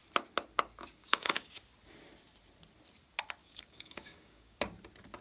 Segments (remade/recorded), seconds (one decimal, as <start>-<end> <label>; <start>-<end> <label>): 0.0-1.0 recorded; 1.0-1.5 remade; 1.5-3.4 recorded; 3.4-4.6 remade; 4.6-5.2 recorded